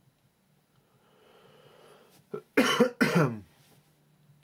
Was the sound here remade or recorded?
recorded